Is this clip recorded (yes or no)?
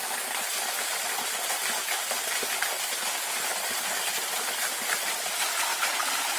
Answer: yes